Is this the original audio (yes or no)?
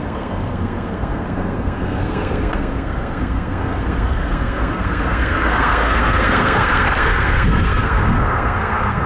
no